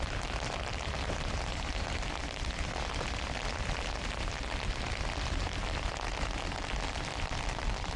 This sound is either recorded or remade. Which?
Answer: recorded